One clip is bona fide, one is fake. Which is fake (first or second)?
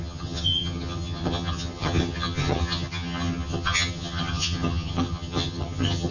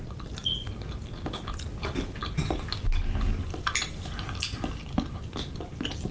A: first